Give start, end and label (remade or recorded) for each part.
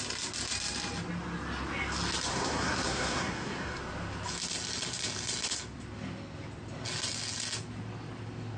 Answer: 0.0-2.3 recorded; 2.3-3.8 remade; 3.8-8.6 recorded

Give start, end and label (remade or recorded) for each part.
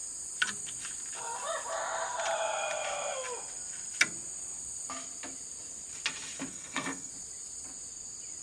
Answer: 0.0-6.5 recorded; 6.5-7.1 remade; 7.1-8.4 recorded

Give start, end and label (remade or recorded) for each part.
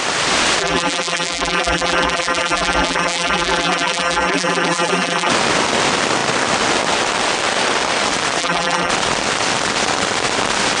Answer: 0.0-0.6 recorded; 0.6-5.3 remade; 5.3-8.4 recorded; 8.4-8.9 remade; 8.9-10.8 recorded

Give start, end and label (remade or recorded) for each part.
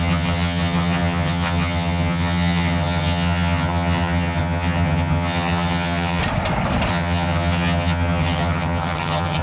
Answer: 0.0-6.2 remade; 6.2-6.9 recorded; 6.9-9.4 remade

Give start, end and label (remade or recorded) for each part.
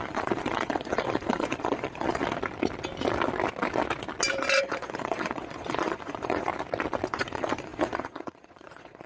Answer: 0.0-2.2 remade; 2.2-4.6 recorded; 4.6-6.5 remade; 6.5-7.1 recorded; 7.1-9.1 remade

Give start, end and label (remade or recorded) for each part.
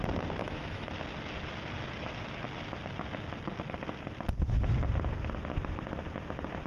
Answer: 0.0-0.4 recorded; 0.4-0.9 remade; 0.9-6.7 recorded